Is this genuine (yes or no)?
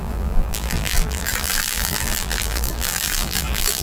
no